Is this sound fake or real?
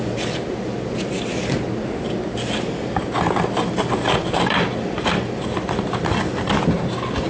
real